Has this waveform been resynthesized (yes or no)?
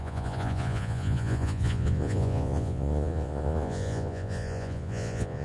yes